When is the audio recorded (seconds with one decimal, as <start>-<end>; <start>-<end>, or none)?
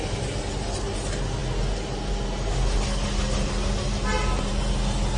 0.0-5.2